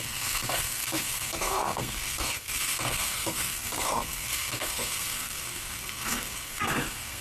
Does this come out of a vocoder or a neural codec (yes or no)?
yes